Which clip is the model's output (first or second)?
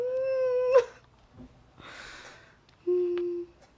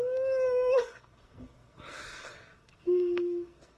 second